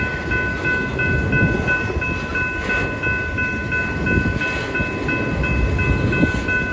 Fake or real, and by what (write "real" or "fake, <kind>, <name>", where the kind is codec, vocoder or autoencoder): real